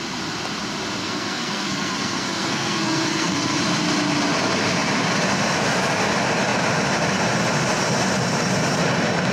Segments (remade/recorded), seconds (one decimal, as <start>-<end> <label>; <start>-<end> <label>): 0.0-1.0 recorded; 1.0-3.6 remade; 3.6-9.3 recorded